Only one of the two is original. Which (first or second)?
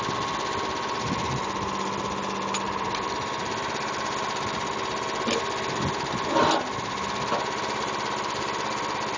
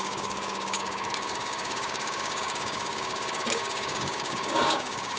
first